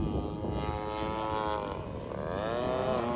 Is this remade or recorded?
recorded